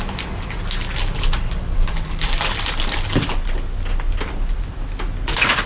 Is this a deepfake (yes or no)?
no